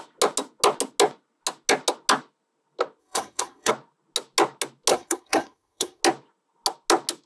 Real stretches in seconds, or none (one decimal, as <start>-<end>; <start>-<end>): 0.0-3.0; 3.7-4.9; 6.0-7.3